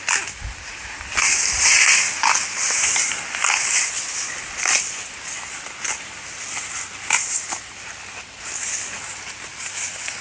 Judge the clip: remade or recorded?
recorded